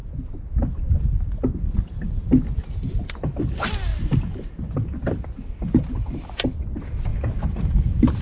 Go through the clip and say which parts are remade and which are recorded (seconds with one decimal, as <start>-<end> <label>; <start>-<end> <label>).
0.0-2.9 recorded; 2.9-3.9 remade; 3.9-5.8 recorded; 5.8-7.1 remade; 7.1-7.6 recorded; 7.6-8.2 remade